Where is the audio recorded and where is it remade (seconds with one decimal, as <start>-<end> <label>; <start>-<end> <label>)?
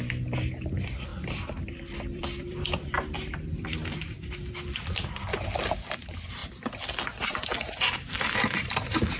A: 0.0-1.1 recorded; 1.1-4.5 remade; 4.5-9.2 recorded